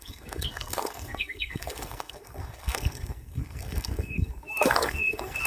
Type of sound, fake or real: fake